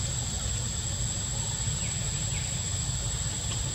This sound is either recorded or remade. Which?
recorded